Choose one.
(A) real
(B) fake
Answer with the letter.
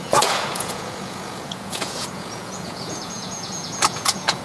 B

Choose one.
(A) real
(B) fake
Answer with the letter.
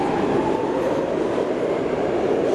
A